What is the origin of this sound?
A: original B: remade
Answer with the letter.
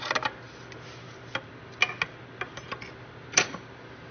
A